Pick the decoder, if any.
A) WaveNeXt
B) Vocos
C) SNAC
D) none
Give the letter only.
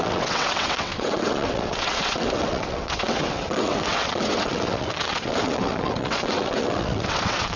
A